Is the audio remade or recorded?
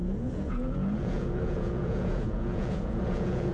remade